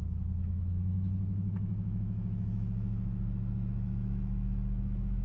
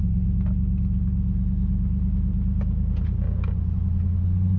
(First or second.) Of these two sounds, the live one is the second